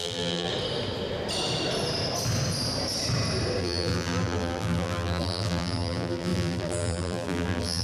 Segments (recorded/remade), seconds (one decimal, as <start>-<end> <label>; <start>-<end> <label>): 0.0-0.5 remade; 0.5-3.6 recorded; 3.6-7.8 remade